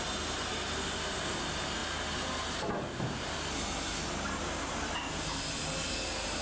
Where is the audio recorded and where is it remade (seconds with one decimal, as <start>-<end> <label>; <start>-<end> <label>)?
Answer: 0.0-6.4 recorded